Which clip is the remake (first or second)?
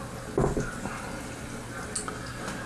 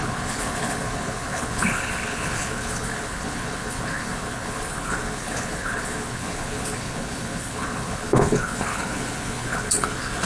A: second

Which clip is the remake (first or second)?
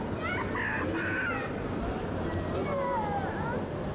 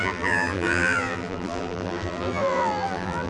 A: second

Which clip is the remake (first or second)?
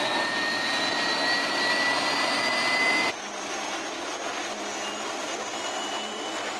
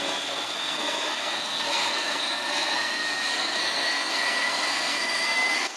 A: second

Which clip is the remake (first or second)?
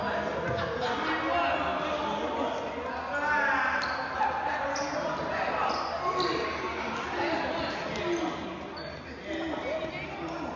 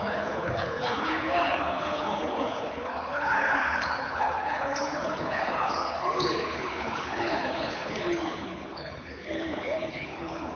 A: second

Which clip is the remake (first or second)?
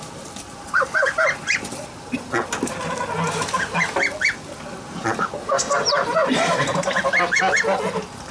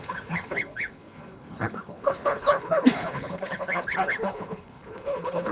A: second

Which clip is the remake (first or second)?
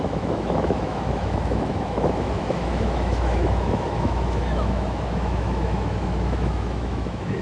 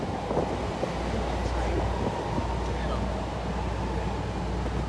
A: first